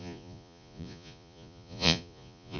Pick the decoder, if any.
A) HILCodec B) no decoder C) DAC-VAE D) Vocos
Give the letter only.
D